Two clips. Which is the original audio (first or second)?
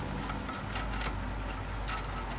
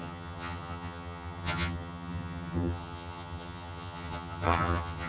first